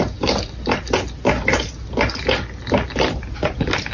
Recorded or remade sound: recorded